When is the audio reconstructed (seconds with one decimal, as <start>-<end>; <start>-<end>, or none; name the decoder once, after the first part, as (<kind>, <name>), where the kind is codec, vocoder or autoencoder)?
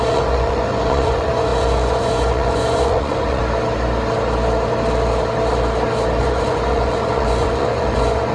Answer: 0.0-3.4 (vocoder, Vocos); 6.2-8.3